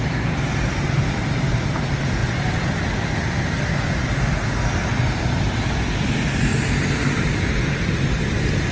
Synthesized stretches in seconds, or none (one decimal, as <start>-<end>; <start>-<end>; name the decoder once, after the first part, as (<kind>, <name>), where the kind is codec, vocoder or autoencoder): none